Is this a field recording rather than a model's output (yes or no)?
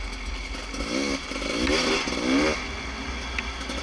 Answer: yes